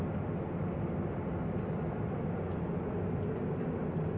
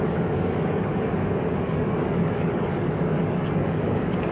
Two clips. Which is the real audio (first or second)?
first